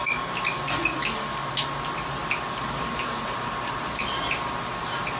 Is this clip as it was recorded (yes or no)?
yes